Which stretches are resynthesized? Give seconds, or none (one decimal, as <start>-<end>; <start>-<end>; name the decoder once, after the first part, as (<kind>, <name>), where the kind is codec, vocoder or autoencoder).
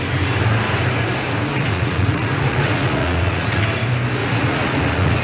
1.5-3.6 (vocoder, Vocos); 4.2-5.2